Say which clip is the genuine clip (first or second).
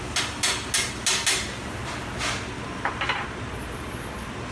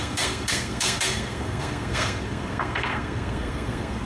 first